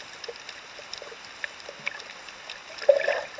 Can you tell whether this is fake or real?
real